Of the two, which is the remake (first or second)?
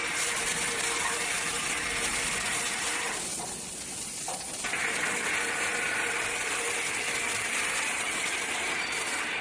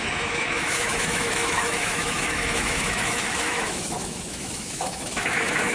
second